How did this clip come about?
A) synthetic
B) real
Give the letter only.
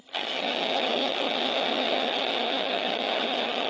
A